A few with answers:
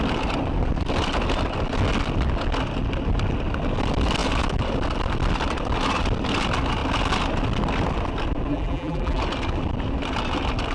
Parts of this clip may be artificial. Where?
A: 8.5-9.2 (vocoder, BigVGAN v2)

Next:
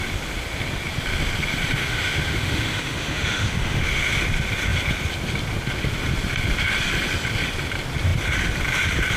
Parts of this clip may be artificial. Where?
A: 1.8-4.2 (autoencoder, DAC-VAE)

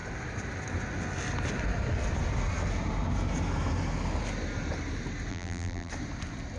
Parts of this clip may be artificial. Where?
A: 5.3-5.9 (vocoder, BigVGAN v2)

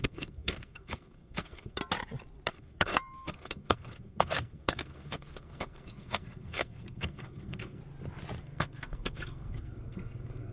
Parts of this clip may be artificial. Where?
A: 0.0-1.8 (codec, SNAC); 2.5-7.8; 8.4-10.5

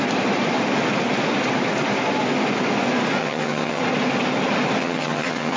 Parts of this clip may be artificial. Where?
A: 3.2-3.8 (vocoder, HiFi-GAN); 4.8-5.6